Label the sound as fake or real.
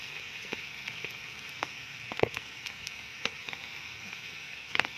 fake